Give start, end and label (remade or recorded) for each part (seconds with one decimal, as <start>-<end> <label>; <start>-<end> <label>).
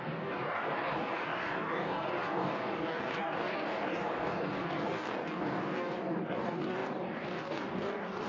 0.0-8.3 remade